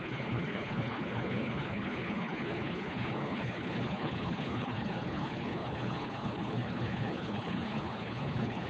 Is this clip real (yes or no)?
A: no